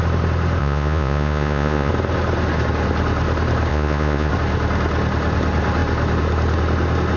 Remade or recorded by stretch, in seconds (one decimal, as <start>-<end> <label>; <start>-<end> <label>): 0.0-0.6 recorded; 0.6-1.9 remade; 1.9-3.7 recorded; 3.7-4.3 remade; 4.3-7.2 recorded